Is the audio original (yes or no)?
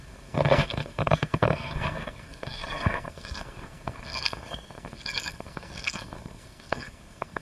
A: no